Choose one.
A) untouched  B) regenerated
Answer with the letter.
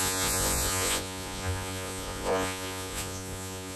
B